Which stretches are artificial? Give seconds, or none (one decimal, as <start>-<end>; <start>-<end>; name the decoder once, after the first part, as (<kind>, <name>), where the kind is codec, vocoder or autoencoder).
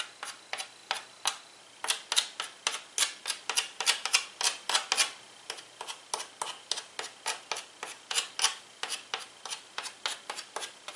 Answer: none